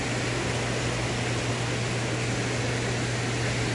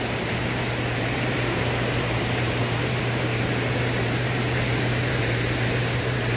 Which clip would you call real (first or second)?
first